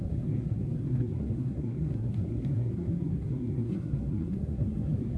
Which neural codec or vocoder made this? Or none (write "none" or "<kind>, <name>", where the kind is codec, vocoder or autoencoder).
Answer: codec, SNAC